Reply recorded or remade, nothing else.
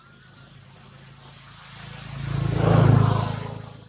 recorded